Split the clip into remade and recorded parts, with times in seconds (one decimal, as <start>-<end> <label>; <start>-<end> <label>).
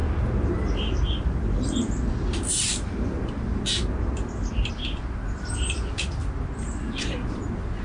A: 0.0-7.8 recorded